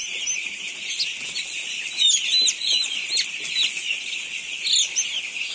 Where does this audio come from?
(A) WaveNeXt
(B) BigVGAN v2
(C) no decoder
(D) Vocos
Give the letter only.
C